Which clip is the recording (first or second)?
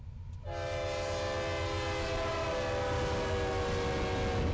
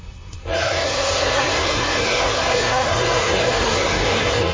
first